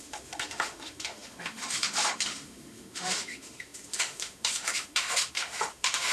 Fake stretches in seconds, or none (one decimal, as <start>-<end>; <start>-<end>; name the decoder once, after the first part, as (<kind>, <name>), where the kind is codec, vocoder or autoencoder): 0.0-6.1 (autoencoder, DAC-VAE)